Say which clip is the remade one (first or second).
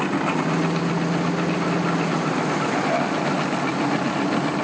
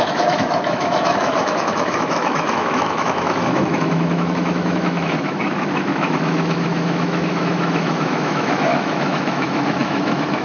second